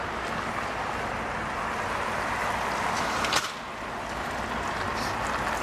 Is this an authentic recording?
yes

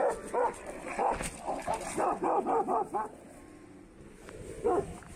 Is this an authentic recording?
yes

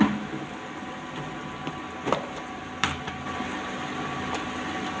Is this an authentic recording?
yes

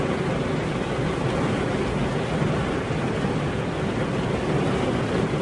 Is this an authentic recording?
yes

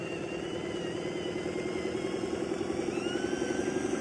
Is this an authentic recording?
yes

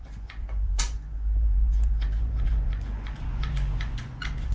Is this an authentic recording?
no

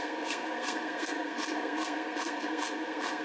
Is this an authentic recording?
no